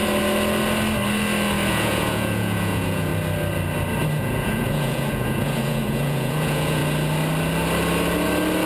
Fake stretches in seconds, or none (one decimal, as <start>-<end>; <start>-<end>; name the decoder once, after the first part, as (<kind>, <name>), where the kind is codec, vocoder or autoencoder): 1.7-3.1 (vocoder, Vocos); 4.2-6.8